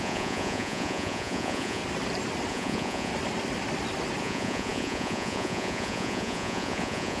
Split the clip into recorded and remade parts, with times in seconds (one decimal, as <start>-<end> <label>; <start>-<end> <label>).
0.0-1.8 remade; 1.8-2.5 recorded; 2.5-3.1 remade; 3.1-4.2 recorded; 4.2-7.2 remade

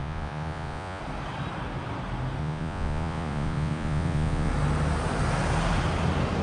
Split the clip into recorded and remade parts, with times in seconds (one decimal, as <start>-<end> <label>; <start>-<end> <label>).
0.0-1.0 remade; 1.0-2.4 recorded; 2.4-4.5 remade; 4.5-6.4 recorded

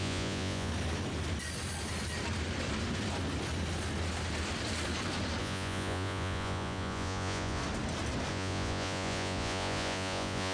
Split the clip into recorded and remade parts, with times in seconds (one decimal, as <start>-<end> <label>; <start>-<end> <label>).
0.0-0.7 remade; 0.7-5.4 recorded; 5.4-7.6 remade; 7.6-8.3 recorded; 8.3-10.5 remade